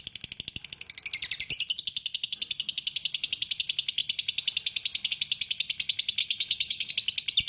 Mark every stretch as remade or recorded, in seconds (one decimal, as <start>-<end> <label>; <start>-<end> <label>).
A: 0.0-6.2 recorded; 6.2-6.9 remade; 6.9-7.5 recorded